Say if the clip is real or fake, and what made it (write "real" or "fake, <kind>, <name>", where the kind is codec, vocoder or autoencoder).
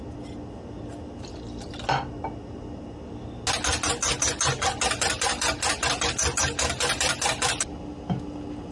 real